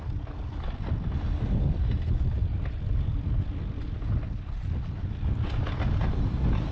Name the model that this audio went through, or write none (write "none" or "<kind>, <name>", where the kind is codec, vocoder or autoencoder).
none